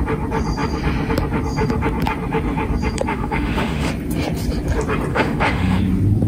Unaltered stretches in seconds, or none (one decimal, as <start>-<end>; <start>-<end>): 0.0-3.1; 3.9-5.1; 5.8-6.3